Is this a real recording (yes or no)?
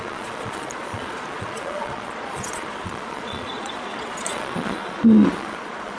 no